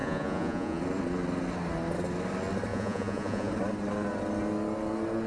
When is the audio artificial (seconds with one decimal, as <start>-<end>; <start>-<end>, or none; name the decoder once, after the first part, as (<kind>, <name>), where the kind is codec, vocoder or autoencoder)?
0.0-0.8 (vocoder, Vocos); 2.7-3.5